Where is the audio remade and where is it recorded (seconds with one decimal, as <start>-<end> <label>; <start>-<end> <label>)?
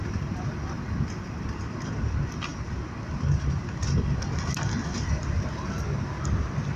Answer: 0.0-6.8 recorded